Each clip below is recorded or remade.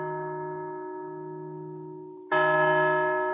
recorded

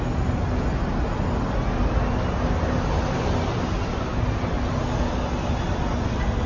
recorded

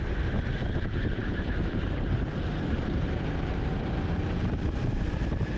remade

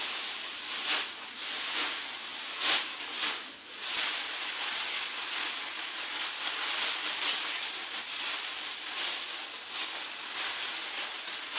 recorded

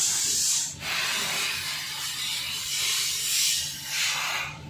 remade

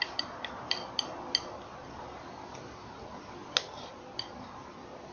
recorded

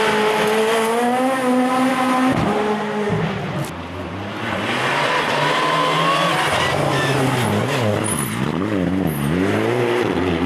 recorded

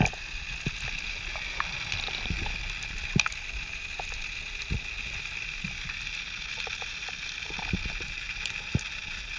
recorded